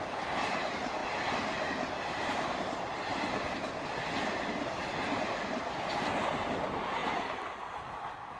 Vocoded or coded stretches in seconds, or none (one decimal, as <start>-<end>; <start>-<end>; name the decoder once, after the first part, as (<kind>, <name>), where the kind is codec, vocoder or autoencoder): none